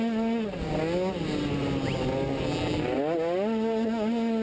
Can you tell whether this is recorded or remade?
recorded